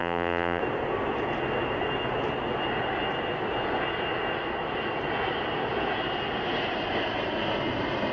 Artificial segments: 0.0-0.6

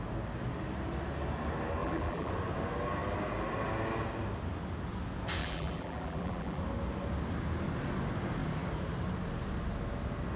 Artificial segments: 1.8-2.3; 5.4-6.6

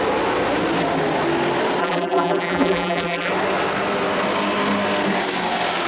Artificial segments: 1.8-3.3

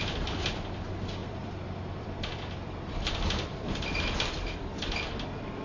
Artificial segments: 1.2-4.6

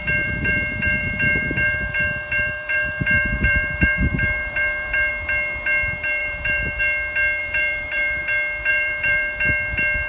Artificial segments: 0.0-5.1; 6.2-6.8; 7.4-8.2; 8.7-9.3

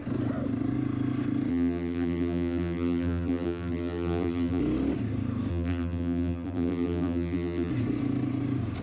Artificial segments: 1.5-4.6; 5.5-7.7

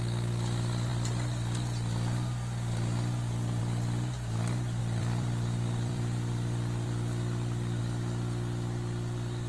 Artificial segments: 4.8-7.8